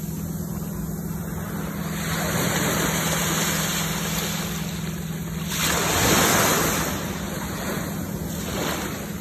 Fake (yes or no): no